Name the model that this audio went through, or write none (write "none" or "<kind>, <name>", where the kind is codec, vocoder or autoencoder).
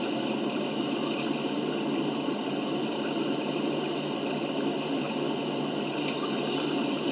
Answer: none